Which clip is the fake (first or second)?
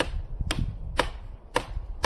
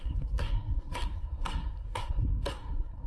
second